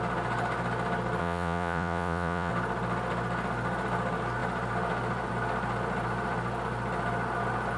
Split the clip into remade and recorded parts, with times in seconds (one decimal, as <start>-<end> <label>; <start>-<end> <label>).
0.0-1.2 recorded; 1.2-2.5 remade; 2.5-7.8 recorded